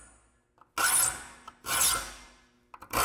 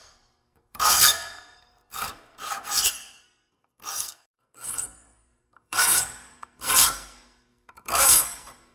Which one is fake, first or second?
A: second